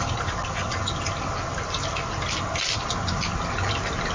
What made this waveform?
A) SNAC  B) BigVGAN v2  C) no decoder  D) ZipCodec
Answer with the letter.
C